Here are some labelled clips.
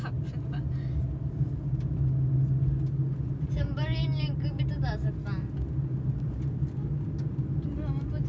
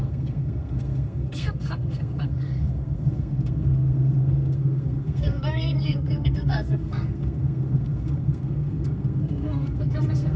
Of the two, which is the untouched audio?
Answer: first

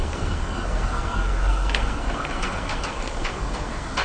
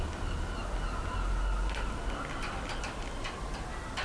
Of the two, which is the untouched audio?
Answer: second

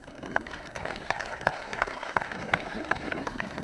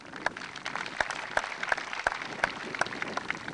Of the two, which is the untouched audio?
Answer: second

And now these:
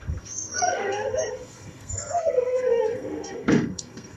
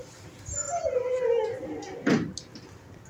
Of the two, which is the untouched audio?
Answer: second